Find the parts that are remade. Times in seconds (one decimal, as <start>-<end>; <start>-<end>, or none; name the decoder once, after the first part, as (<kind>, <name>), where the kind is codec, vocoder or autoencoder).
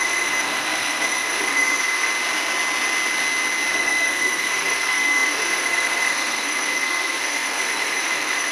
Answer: 0.0-2.1 (codec, SNAC); 3.7-8.5